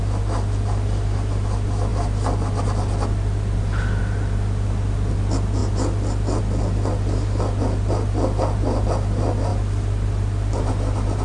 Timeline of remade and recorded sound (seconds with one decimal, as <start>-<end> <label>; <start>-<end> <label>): 0.0-1.9 recorded; 1.9-4.0 remade; 4.0-5.6 recorded; 5.6-6.4 remade; 6.4-9.5 recorded; 9.5-10.7 remade; 10.7-11.2 recorded